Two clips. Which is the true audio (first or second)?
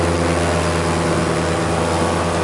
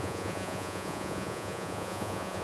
first